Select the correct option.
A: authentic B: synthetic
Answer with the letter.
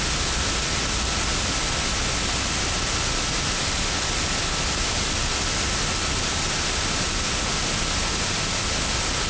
A